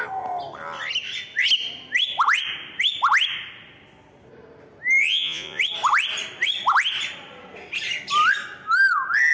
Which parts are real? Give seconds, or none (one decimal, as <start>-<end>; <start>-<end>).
0.0-5.0; 5.6-9.3